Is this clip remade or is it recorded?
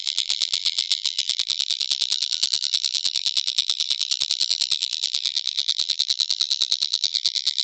remade